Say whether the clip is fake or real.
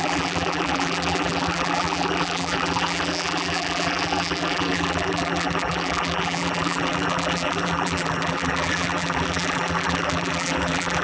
fake